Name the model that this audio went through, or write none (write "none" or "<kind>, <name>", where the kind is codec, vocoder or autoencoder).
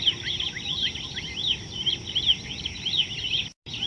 none